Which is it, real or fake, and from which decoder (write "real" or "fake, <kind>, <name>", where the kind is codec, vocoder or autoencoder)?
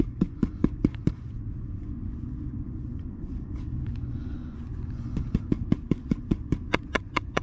fake, vocoder, Vocos